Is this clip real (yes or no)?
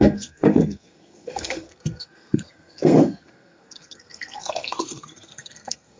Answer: no